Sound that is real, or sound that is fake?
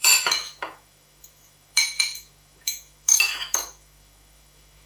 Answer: fake